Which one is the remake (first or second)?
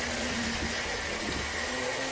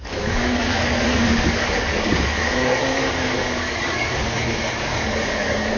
second